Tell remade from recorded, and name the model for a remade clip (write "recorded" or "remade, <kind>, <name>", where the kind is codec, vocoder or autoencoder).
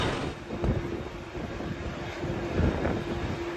recorded